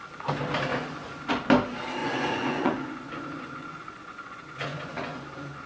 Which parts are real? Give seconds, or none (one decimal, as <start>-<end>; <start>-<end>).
0.0-0.7; 1.3-2.0